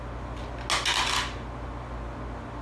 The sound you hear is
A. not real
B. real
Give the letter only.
B